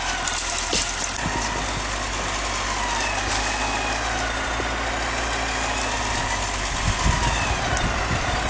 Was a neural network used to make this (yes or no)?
no